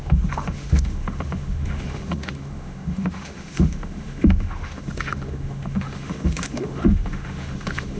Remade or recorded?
remade